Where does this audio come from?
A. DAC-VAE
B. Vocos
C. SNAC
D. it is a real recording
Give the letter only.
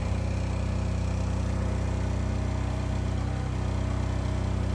D